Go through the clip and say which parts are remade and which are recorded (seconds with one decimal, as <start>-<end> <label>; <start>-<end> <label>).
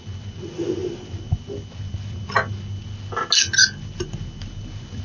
0.0-5.0 recorded